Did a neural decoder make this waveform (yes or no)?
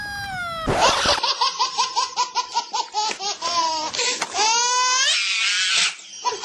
no